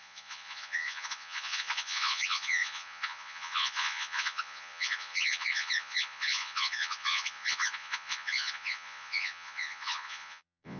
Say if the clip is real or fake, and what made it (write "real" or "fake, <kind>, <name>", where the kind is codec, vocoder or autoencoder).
fake, vocoder, Vocos